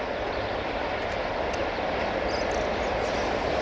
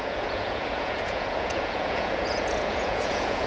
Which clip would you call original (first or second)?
first